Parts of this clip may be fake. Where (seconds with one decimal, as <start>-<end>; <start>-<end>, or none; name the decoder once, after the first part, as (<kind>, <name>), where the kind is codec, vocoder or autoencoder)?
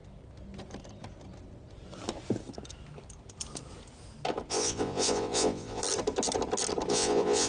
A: 4.5-5.8 (vocoder, Vocos); 6.9-7.5